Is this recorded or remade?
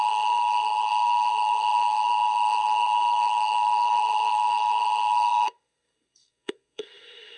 remade